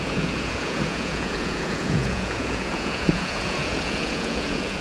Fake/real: fake